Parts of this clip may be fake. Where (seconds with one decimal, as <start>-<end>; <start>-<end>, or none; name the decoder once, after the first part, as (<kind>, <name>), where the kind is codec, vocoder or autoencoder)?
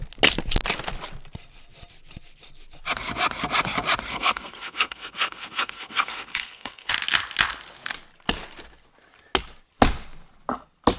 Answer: 4.1-6.9 (codec, SNAC)